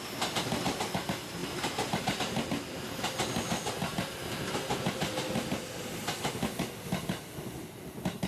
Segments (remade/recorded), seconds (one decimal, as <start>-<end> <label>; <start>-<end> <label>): 0.0-8.3 recorded